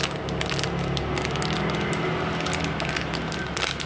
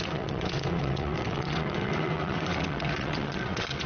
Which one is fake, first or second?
second